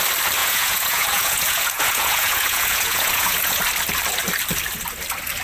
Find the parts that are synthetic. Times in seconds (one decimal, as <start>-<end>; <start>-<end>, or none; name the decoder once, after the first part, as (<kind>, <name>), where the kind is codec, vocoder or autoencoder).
0.4-3.6 (vocoder, Vocos)